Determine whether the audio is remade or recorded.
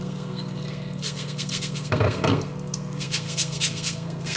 remade